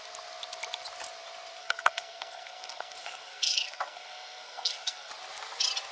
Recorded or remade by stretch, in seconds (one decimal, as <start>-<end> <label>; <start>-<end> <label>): 0.0-1.6 recorded; 1.6-5.1 remade; 5.1-5.9 recorded